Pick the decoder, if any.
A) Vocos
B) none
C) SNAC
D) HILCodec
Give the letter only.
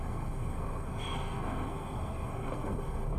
C